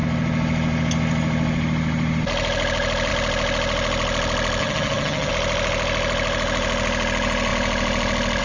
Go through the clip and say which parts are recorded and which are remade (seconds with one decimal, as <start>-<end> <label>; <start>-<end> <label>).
0.0-4.6 recorded; 4.6-5.3 remade; 5.3-8.4 recorded